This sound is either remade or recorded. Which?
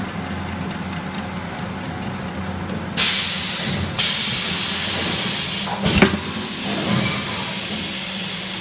recorded